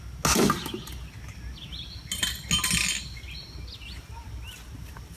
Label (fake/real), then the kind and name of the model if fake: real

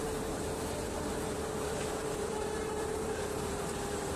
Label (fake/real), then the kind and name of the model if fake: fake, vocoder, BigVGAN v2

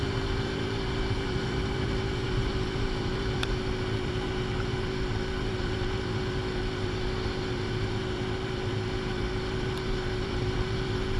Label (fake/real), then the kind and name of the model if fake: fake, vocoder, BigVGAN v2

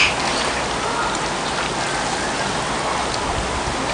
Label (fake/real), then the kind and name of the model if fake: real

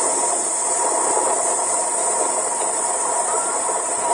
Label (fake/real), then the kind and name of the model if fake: fake, vocoder, BigVGAN v2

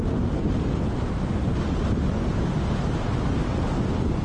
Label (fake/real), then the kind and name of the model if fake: real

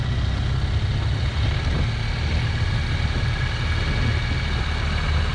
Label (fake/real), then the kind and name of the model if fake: real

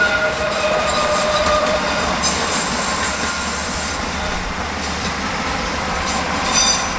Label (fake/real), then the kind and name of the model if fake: fake, vocoder, BigVGAN v2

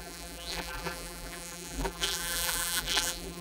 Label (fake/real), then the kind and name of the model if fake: fake, vocoder, BigVGAN v2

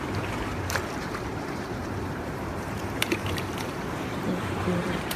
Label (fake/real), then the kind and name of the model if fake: fake, vocoder, BigVGAN v2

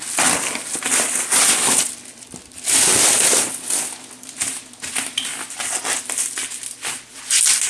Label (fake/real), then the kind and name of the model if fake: real